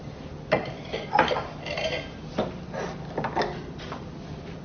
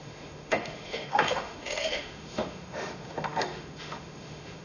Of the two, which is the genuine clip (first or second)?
first